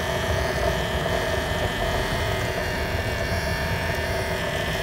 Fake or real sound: real